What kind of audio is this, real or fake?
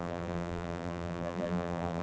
fake